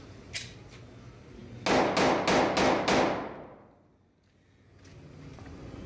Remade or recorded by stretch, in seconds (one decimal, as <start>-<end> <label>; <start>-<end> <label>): 0.0-5.3 recorded; 5.3-5.9 remade